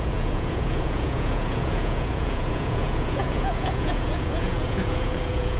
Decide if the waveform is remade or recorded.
remade